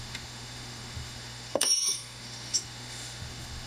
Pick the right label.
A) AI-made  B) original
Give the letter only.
A